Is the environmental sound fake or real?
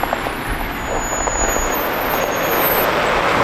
real